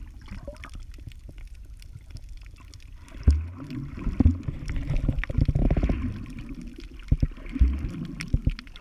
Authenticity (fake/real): real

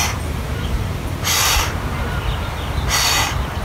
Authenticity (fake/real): fake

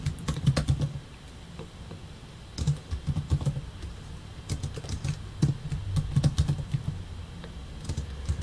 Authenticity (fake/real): real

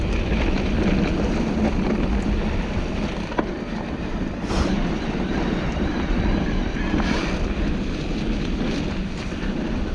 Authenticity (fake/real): fake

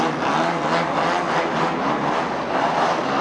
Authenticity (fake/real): real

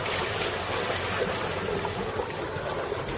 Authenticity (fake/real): real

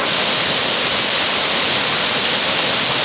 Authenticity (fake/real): real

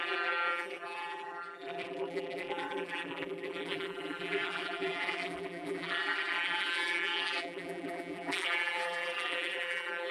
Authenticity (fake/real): fake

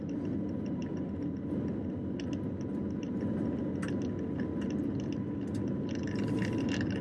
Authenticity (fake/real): real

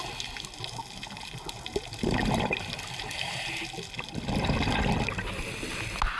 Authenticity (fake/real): real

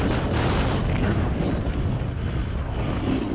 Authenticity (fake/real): real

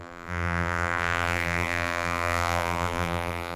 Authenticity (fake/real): fake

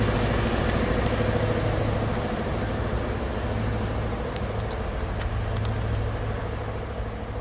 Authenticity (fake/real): real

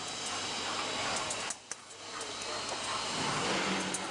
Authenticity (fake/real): real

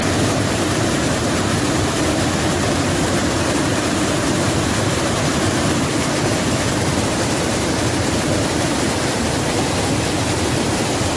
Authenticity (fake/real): fake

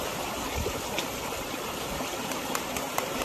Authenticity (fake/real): fake